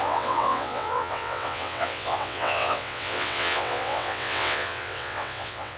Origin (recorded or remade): remade